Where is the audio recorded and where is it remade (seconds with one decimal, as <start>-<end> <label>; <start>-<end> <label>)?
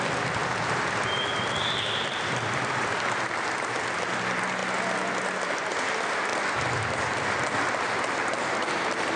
0.0-0.4 remade; 0.4-1.3 recorded; 1.3-4.6 remade; 4.6-5.4 recorded; 5.4-6.3 remade; 6.3-7.0 recorded; 7.0-9.2 remade